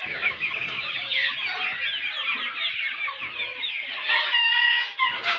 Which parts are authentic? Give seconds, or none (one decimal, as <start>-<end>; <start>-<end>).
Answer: 1.3-4.4